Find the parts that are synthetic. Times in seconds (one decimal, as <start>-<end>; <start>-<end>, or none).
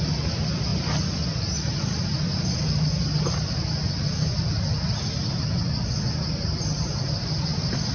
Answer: none